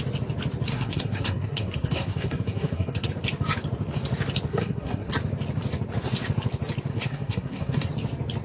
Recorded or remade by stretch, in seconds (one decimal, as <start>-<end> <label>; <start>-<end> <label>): 0.0-0.7 recorded; 0.7-3.1 remade; 3.1-4.5 recorded; 4.5-5.1 remade; 5.1-6.9 recorded; 6.9-7.9 remade; 7.9-8.4 recorded

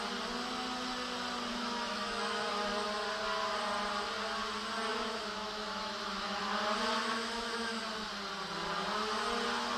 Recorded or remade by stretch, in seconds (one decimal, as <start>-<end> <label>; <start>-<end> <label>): 0.0-1.5 recorded; 1.5-2.5 remade; 2.5-4.9 recorded; 4.9-6.4 remade; 6.4-7.0 recorded; 7.0-7.8 remade; 7.8-9.8 recorded

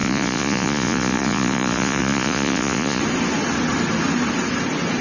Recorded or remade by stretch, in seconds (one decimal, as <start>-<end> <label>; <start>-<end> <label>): 0.0-3.0 remade; 3.0-5.0 recorded

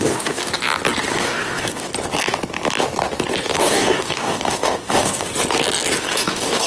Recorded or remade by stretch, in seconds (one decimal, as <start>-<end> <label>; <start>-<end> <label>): 0.0-0.5 remade; 0.5-1.1 recorded; 1.1-1.9 remade; 1.9-3.6 recorded; 3.6-5.3 remade; 5.3-6.0 recorded; 6.0-6.7 remade

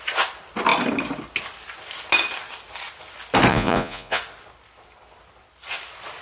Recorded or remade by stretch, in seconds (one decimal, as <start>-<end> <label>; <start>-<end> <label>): 0.0-3.5 recorded; 3.5-4.2 remade; 4.2-6.2 recorded

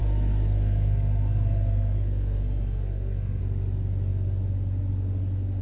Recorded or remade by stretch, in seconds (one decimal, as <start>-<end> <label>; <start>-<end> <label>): 0.0-3.4 remade; 3.4-5.6 recorded

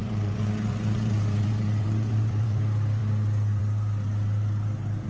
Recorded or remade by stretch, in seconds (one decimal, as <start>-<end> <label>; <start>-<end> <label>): 0.0-2.6 remade; 2.6-5.1 recorded